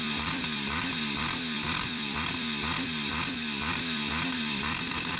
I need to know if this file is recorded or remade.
remade